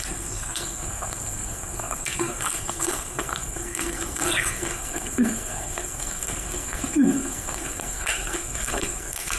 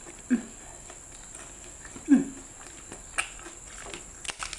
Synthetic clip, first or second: first